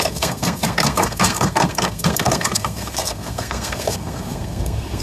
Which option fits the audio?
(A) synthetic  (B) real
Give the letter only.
A